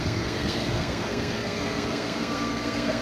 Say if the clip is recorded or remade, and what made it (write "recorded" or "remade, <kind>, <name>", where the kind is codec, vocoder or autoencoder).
remade, codec, SNAC